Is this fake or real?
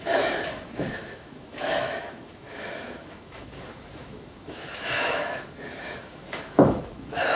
fake